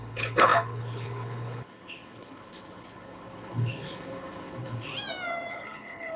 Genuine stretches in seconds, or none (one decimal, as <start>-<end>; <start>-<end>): 4.9-5.5

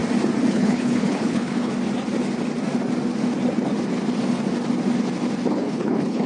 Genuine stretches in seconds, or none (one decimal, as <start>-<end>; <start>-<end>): 0.0-0.5; 1.7-5.5

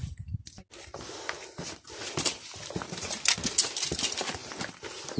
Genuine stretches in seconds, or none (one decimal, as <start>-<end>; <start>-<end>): 0.0-5.2

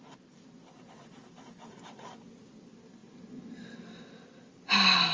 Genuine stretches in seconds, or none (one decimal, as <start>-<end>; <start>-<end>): 0.0-5.1

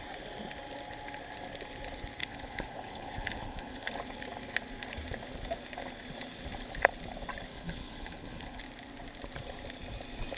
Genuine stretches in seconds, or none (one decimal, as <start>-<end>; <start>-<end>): 0.0-2.2; 3.9-7.5; 8.6-10.4

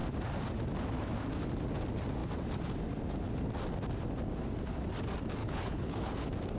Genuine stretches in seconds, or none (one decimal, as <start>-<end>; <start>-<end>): 0.0-5.4; 6.1-6.6

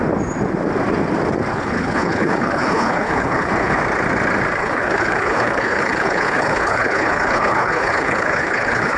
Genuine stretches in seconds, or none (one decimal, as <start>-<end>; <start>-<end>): 0.0-1.5; 3.8-4.6

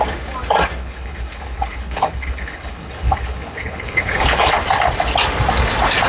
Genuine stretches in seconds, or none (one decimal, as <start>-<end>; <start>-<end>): 0.0-0.8; 4.5-6.1